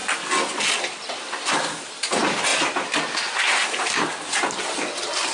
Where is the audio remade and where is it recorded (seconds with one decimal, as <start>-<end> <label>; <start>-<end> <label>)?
0.0-5.3 recorded